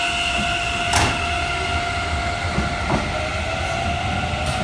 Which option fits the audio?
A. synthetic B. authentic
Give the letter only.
B